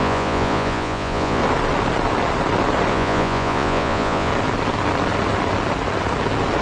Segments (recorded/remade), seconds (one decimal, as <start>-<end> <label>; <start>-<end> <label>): 0.0-1.4 remade; 1.4-2.9 recorded; 2.9-4.3 remade; 4.3-6.6 recorded